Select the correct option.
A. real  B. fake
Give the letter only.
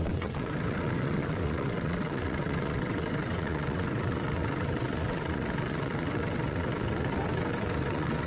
B